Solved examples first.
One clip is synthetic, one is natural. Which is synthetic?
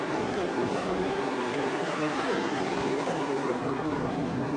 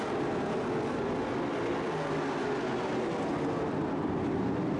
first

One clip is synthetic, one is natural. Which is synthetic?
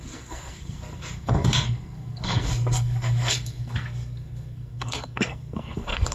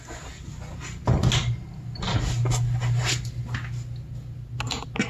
first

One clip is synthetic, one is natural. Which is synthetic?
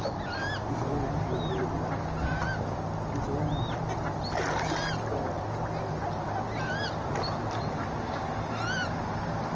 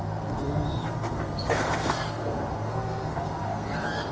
second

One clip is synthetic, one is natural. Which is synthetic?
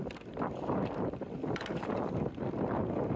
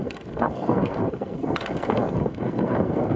second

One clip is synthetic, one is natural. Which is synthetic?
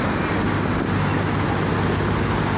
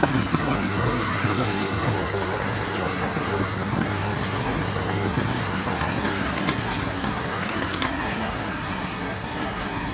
second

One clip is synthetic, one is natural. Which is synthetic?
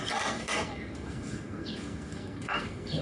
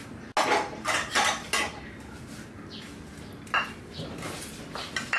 first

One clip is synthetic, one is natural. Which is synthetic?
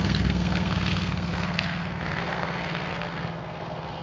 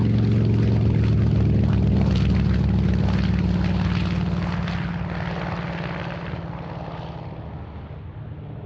first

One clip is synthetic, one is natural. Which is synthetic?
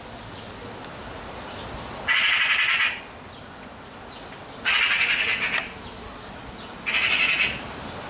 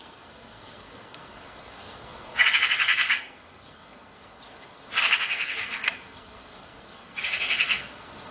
second